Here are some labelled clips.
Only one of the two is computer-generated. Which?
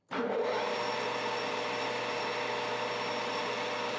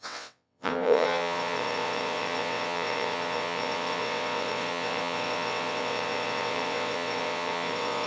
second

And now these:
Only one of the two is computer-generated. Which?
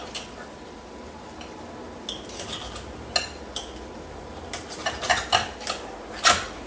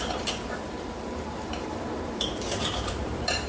second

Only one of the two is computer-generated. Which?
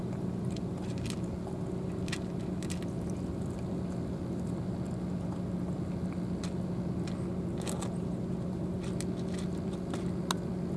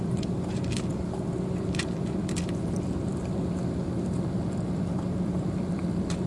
second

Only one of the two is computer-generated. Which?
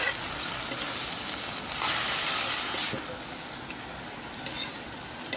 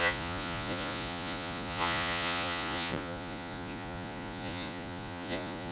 second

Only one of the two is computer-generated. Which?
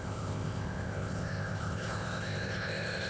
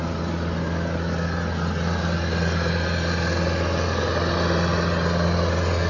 first